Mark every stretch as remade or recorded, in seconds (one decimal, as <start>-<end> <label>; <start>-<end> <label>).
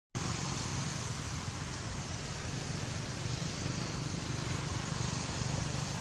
0.0-0.7 recorded; 0.7-2.0 remade; 2.0-2.4 recorded; 2.4-3.8 remade; 3.8-4.7 recorded; 4.7-6.0 remade